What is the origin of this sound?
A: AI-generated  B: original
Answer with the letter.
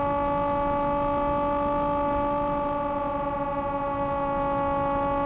B